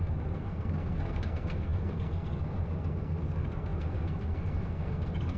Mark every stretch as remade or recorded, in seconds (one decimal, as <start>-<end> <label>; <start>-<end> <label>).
0.0-5.4 remade